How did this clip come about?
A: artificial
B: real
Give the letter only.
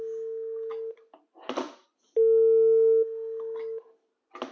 B